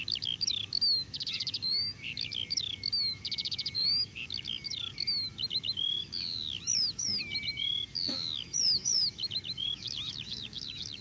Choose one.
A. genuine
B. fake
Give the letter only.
B